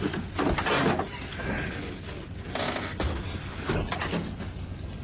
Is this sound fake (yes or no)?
no